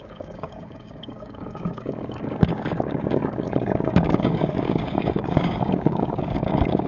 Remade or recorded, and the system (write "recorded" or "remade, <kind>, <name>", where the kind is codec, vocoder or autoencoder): remade, codec, DAC